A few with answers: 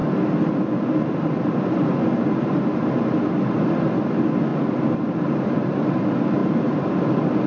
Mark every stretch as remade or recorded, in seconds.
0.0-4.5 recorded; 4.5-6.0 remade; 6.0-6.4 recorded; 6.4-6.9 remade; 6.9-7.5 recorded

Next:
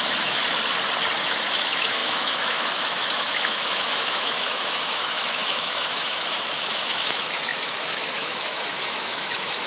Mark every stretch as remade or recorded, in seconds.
0.0-0.4 remade; 0.4-1.2 recorded; 1.2-9.7 remade

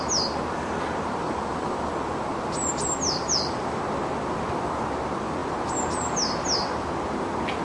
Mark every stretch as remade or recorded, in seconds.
0.0-1.2 recorded; 1.2-1.9 remade; 1.9-3.2 recorded; 3.2-3.8 remade; 3.8-7.6 recorded

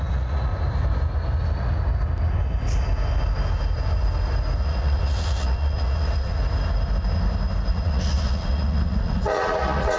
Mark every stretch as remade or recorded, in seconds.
0.0-0.5 remade; 0.5-4.6 recorded; 4.6-6.4 remade; 6.4-7.7 recorded; 7.7-10.0 remade